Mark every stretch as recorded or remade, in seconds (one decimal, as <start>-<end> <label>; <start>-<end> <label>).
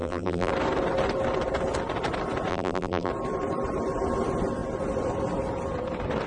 0.0-0.5 remade; 0.5-2.5 recorded; 2.5-3.1 remade; 3.1-6.3 recorded